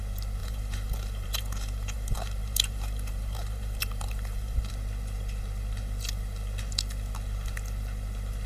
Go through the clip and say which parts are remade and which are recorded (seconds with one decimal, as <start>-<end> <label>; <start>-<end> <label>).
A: 0.0-0.4 recorded; 0.4-4.7 remade; 4.7-8.5 recorded